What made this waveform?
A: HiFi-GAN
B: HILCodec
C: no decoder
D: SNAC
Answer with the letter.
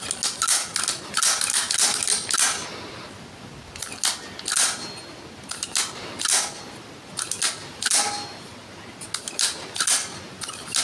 C